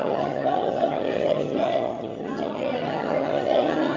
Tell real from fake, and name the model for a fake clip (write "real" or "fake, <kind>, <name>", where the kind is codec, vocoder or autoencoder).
fake, vocoder, HiFi-GAN